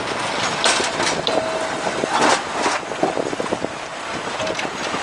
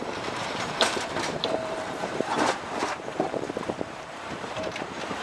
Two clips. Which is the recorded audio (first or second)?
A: first